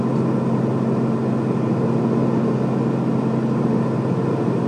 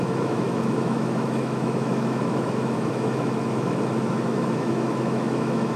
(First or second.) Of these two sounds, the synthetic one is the second